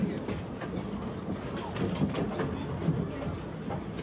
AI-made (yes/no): no